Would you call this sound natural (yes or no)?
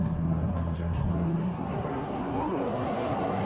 no